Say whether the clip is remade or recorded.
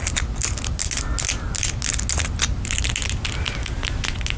recorded